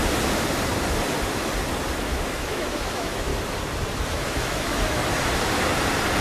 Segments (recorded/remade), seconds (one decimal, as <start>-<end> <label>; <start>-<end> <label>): 0.0-2.0 recorded; 2.0-3.3 remade; 3.3-4.1 recorded; 4.1-5.0 remade; 5.0-6.2 recorded